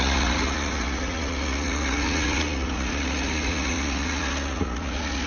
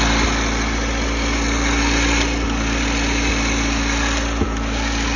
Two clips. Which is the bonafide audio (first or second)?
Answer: second